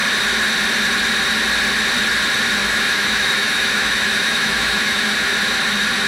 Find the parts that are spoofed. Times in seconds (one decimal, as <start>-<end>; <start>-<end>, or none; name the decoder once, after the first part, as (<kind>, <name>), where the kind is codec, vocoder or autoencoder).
2.6-5.1 (autoencoder, DAC-VAE)